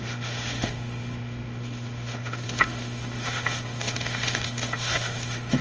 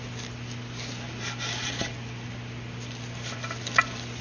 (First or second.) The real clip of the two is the second